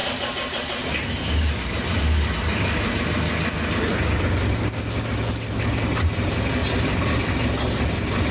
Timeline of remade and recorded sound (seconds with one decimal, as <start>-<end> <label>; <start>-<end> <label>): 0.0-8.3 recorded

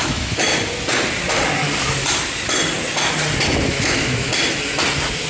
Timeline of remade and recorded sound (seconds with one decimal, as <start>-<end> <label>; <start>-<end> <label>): 0.0-0.5 remade; 0.5-3.7 recorded; 3.7-4.3 remade; 4.3-5.3 recorded

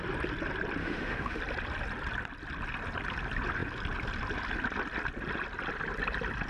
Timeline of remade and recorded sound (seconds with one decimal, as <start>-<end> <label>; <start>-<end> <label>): 0.0-0.8 recorded; 0.8-1.4 remade; 1.4-6.5 recorded

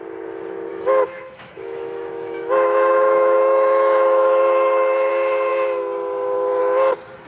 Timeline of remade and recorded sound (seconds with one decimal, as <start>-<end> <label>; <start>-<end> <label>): 0.0-0.7 recorded; 0.7-5.1 remade; 5.1-7.3 recorded